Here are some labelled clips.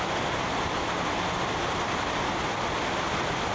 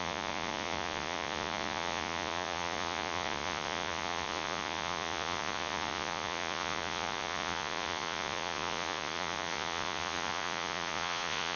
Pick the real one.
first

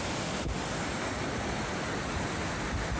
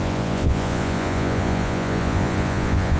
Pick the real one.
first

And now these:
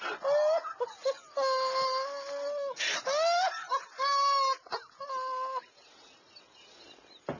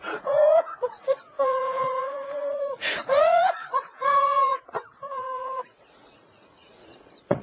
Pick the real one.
first